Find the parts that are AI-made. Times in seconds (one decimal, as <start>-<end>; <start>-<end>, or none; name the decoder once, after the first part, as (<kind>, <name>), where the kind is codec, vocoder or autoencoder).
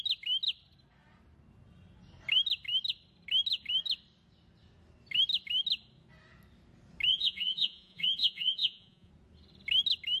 7.1-9.1 (vocoder, Vocos)